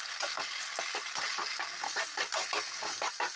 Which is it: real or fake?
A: real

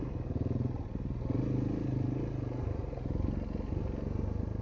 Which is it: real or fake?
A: real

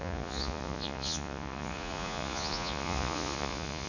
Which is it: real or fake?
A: fake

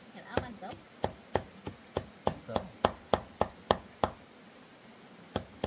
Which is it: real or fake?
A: real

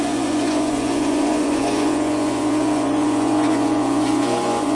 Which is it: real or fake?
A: fake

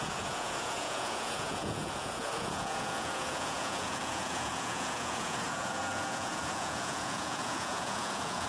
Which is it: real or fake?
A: fake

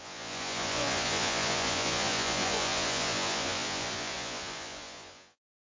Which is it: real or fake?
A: fake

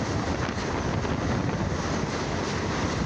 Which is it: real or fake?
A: real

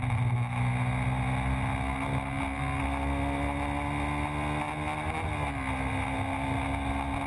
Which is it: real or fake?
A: real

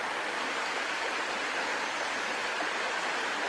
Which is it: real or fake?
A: real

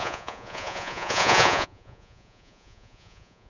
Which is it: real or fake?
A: fake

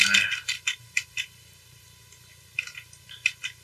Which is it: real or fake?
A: real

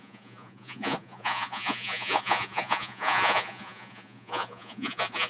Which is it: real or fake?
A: fake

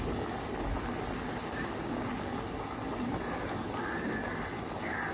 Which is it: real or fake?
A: real